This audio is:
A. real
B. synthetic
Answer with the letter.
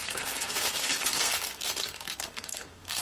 B